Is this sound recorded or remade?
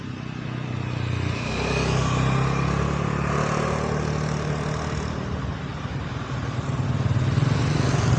recorded